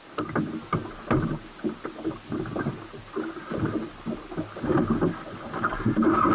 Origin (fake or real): real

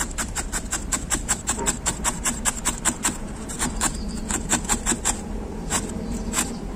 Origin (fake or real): fake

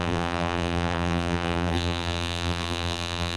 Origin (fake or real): fake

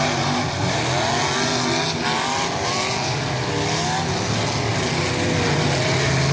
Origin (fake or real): real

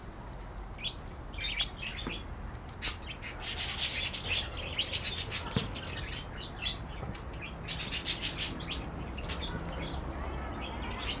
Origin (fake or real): real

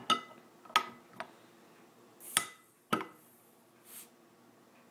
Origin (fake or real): real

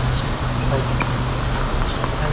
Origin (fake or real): fake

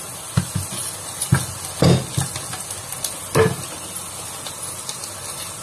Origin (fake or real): real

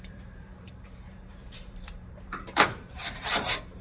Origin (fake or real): fake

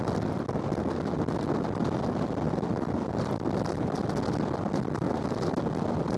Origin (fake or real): real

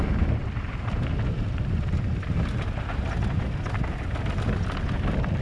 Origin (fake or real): real